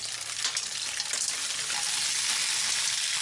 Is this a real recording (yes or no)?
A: yes